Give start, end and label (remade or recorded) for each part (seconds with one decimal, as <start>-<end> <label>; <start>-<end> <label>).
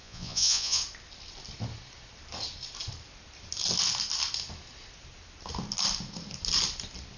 0.0-0.8 remade; 0.8-7.2 recorded